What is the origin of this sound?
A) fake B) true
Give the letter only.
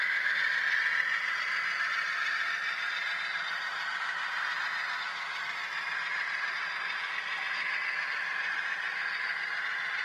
B